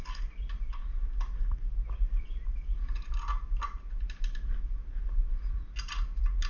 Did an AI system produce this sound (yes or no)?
no